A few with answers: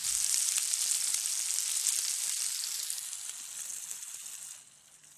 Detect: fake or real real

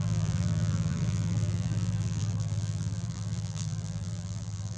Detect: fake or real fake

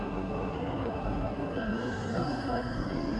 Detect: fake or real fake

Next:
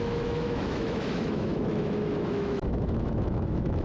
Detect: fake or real fake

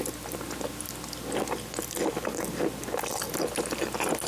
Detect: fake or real real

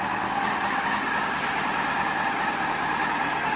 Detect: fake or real real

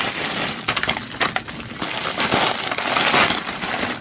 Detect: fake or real real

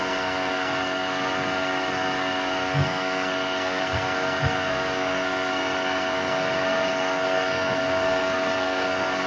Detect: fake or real fake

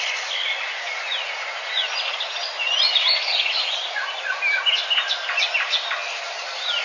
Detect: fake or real real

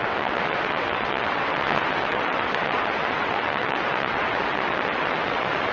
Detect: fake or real fake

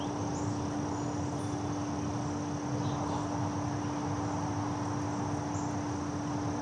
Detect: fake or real real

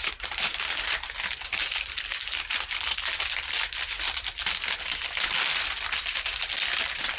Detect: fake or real real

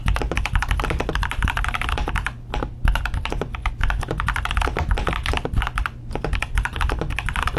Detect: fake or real real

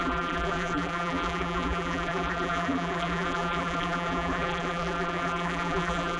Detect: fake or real fake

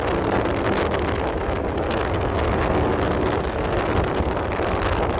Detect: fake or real real